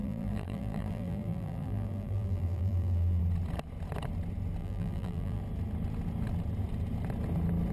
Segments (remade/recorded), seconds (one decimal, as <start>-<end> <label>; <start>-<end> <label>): 0.0-3.2 remade; 3.2-4.6 recorded; 4.6-5.4 remade; 5.4-7.7 recorded